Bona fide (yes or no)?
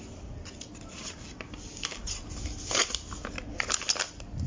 yes